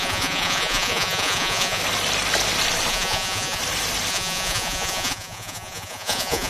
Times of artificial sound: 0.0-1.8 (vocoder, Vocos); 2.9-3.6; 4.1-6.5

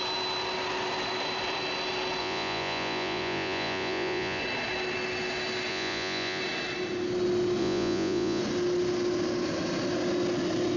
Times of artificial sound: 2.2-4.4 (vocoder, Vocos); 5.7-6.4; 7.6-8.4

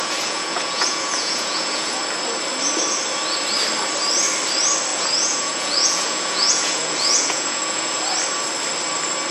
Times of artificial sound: 0.0-2.0 (vocoder, Vocos); 4.9-8.0